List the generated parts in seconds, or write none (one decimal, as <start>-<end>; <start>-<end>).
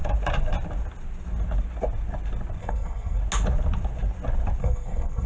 2.6-3.2; 4.6-5.3